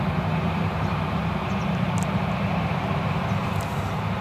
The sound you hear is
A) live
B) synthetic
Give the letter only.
B